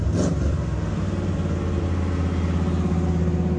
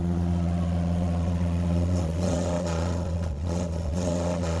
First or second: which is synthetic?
second